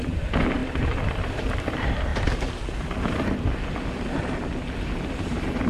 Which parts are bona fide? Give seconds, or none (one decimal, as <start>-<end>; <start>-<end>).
0.6-1.1; 2.1-5.1